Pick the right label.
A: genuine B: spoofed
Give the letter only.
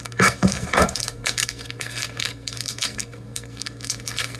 B